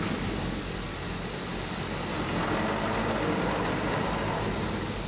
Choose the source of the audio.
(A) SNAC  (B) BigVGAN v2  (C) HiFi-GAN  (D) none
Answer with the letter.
D